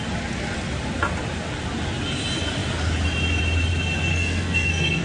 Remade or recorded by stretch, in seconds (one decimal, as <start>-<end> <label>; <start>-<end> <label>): 0.0-4.1 recorded; 4.1-5.0 remade